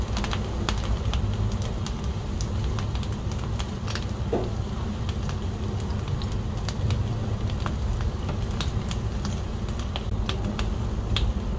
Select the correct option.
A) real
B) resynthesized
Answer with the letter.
A